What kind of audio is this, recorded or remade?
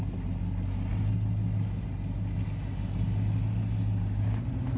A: recorded